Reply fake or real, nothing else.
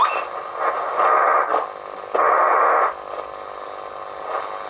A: real